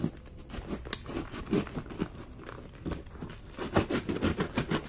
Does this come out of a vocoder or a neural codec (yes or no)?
no